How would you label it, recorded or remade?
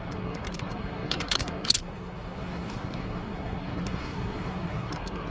remade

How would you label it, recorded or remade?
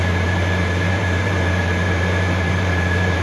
remade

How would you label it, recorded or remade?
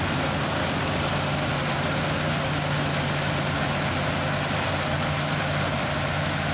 recorded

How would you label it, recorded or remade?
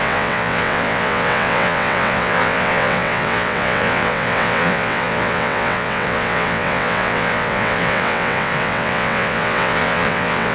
remade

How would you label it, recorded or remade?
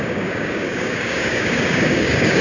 remade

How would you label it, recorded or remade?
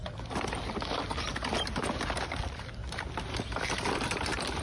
recorded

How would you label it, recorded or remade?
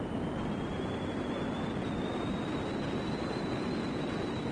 recorded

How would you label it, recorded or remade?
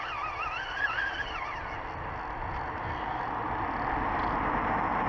recorded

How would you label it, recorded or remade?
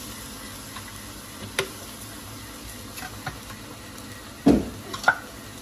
recorded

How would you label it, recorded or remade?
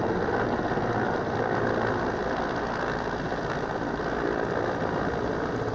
recorded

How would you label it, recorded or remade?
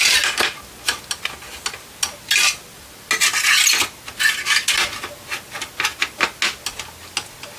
recorded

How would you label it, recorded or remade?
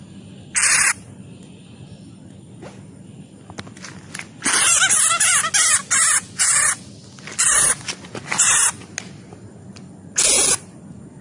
recorded